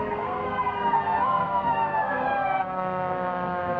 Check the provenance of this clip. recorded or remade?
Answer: remade